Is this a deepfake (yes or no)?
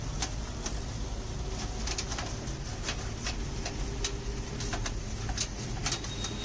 no